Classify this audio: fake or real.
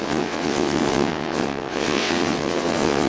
fake